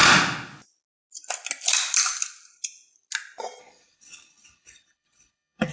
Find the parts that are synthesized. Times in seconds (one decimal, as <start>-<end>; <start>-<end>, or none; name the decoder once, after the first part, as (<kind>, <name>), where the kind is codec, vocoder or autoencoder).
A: 3.6-5.7 (codec, HILCodec)

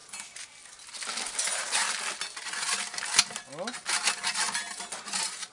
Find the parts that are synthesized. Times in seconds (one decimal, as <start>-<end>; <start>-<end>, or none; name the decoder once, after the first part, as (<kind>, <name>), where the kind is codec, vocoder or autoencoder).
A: none

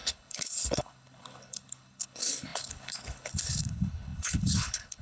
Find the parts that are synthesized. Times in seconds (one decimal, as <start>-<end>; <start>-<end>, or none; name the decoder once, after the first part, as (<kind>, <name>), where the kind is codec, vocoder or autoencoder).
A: 0.0-5.0 (codec, HILCodec)